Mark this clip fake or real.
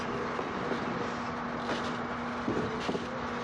real